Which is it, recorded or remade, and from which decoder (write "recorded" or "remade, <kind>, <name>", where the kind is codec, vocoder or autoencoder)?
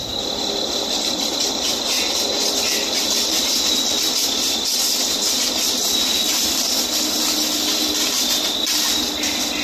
recorded